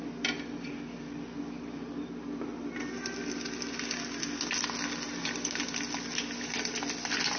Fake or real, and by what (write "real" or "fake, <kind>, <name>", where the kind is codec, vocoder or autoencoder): real